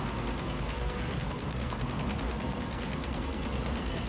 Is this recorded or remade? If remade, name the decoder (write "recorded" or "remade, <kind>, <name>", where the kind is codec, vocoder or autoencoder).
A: remade, codec, SNAC